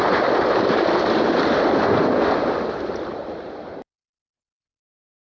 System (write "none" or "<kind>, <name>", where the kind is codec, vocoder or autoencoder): vocoder, BigVGAN v2